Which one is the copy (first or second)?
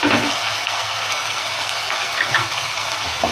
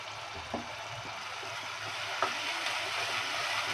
first